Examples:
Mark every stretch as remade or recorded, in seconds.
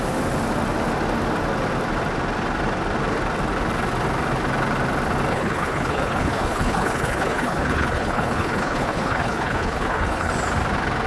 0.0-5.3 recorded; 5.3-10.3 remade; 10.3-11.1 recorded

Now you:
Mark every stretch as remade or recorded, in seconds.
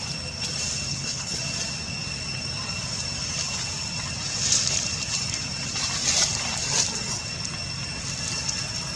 0.0-0.9 recorded; 0.9-1.4 remade; 1.4-9.0 recorded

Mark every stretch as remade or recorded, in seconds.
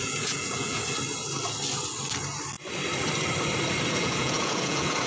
0.0-0.8 remade; 0.8-3.9 recorded; 3.9-5.1 remade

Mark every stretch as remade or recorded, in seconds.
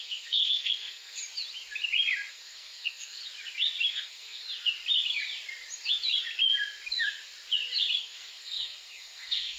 0.0-1.2 remade; 1.2-2.3 recorded; 2.3-3.2 remade; 3.2-3.9 recorded; 3.9-4.4 remade; 4.4-8.0 recorded; 8.0-9.6 remade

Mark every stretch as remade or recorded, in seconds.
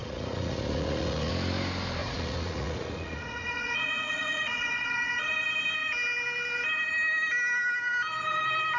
0.0-1.3 remade; 1.3-2.0 recorded; 2.0-5.3 remade; 5.3-8.8 recorded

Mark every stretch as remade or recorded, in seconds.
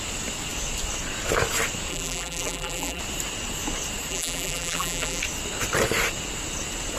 0.0-1.9 recorded; 1.9-3.0 remade; 3.0-4.1 recorded; 4.1-5.2 remade; 5.2-7.0 recorded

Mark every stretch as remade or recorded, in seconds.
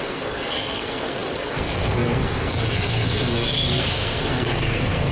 0.0-5.1 remade